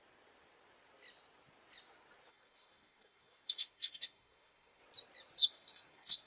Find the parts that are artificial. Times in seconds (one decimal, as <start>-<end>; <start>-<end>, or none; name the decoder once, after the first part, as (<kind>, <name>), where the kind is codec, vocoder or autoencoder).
2.3-4.8 (codec, SNAC); 5.4-6.3